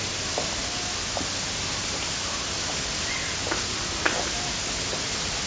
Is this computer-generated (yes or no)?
no